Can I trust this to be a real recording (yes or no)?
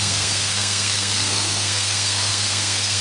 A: no